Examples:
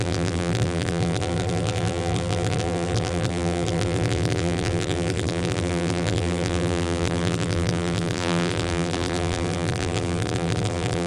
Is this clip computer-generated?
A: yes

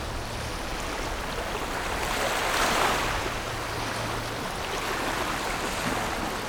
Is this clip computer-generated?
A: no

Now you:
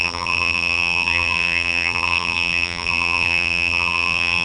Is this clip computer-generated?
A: yes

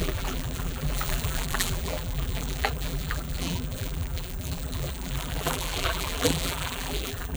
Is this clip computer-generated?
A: yes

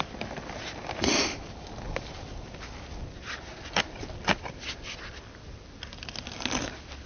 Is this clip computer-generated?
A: no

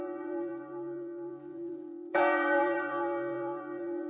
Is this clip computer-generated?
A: yes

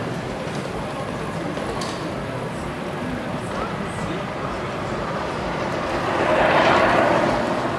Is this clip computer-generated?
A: yes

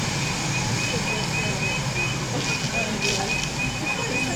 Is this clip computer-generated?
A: no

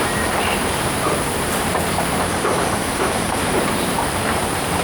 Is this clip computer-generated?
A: yes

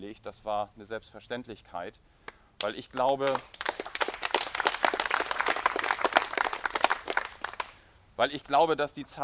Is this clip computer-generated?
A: yes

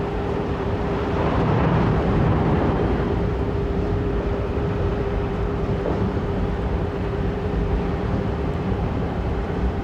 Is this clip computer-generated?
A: yes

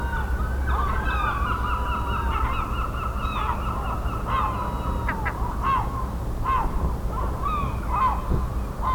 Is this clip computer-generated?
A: no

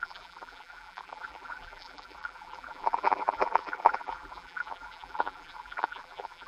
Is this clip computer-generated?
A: yes